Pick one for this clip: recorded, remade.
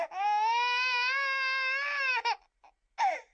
recorded